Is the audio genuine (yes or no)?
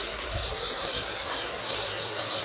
no